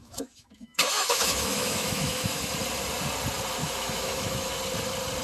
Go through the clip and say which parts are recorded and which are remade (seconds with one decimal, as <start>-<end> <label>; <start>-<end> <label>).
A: 0.0-2.4 remade; 2.4-3.6 recorded; 3.6-4.6 remade; 4.6-5.2 recorded